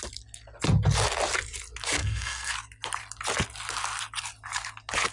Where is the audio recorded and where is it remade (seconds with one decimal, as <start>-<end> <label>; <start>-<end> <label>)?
0.0-2.0 recorded; 2.0-2.5 remade; 2.5-5.1 recorded